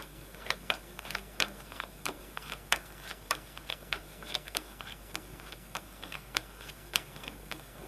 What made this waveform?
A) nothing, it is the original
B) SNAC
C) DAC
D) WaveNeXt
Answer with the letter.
B